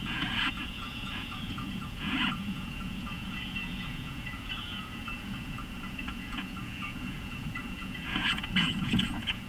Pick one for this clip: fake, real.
fake